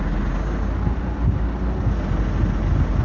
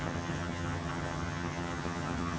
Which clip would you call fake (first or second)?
second